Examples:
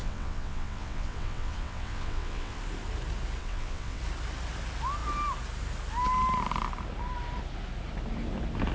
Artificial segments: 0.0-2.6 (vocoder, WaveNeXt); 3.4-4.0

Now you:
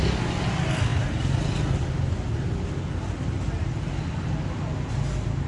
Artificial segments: none

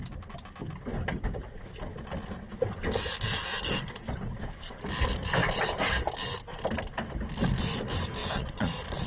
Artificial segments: 8.2-9.1 (vocoder, Vocos)

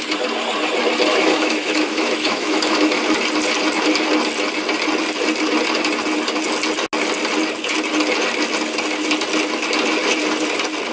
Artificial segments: 1.1-3.0 (autoencoder, DAC-VAE)

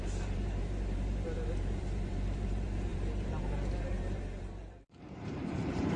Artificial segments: 0.0-6.0 (vocoder, BigVGAN v2)

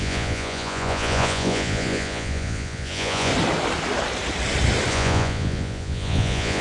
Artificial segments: 0.0-3.3 (vocoder, Vocos); 4.9-6.6

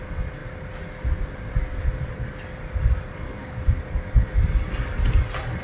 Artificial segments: none